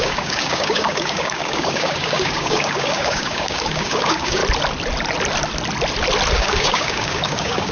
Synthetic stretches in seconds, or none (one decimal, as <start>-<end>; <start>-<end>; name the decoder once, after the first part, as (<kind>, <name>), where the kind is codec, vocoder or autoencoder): 0.0-4.4 (codec, DAC); 6.3-7.7